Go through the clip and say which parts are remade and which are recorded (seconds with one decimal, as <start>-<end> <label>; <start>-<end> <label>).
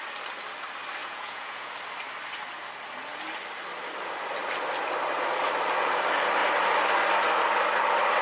0.0-1.0 recorded; 1.0-1.7 remade; 1.7-8.2 recorded